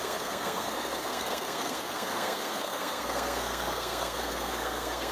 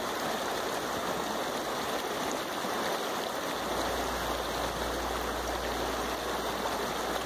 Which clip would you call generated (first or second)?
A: first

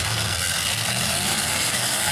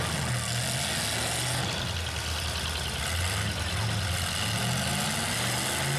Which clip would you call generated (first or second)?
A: first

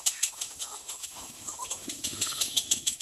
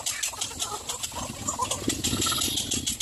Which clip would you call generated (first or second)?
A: first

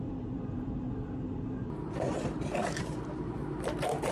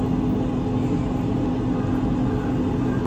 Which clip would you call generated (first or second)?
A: first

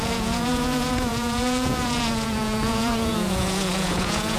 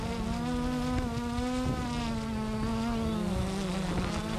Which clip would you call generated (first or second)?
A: first